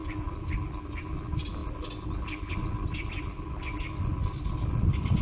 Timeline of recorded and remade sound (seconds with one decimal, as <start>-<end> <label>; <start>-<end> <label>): 0.0-5.2 recorded